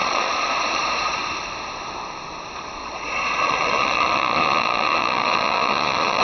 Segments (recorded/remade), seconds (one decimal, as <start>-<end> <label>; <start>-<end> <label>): 0.0-1.2 remade; 1.2-2.8 recorded; 2.8-6.2 remade